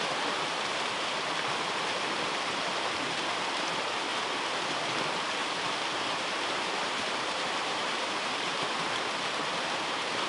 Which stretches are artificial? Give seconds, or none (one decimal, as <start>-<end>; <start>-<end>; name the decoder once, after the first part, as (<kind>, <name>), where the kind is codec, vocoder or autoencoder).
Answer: 0.7-1.2 (vocoder, BigVGAN v2); 5.4-9.0

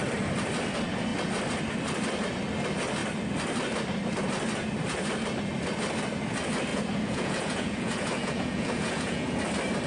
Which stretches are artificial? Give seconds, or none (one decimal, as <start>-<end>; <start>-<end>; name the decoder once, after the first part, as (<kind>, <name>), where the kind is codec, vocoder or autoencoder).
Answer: 6.7-9.4 (vocoder, Vocos)

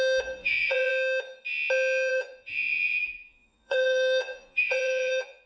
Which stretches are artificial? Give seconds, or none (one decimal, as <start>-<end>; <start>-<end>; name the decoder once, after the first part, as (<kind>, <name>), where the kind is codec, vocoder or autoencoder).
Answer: 0.4-0.9 (vocoder, Vocos); 2.1-5.5